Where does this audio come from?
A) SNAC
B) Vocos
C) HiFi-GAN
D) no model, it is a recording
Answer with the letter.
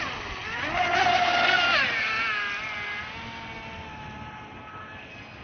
D